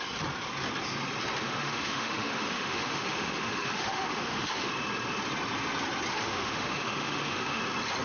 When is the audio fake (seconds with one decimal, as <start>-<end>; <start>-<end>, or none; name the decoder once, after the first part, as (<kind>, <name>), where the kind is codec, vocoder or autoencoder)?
1.4-4.7 (autoencoder, DAC-VAE); 6.1-7.6